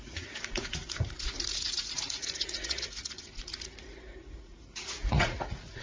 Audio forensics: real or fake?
fake